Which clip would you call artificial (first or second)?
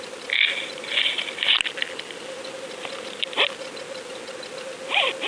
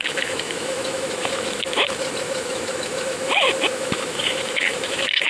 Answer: second